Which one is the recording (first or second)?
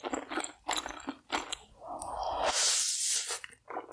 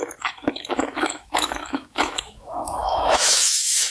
first